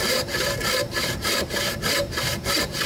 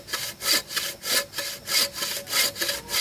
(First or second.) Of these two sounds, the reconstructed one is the first